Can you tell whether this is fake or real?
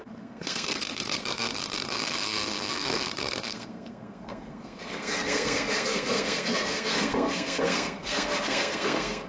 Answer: fake